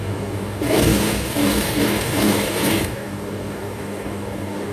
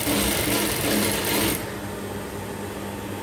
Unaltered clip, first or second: second